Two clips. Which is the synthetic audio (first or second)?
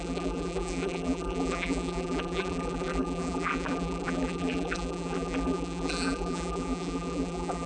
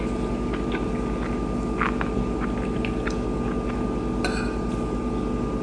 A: first